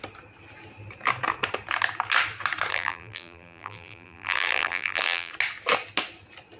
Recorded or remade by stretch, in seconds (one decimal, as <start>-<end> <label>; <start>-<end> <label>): 0.0-2.7 recorded; 2.7-5.3 remade; 5.3-6.6 recorded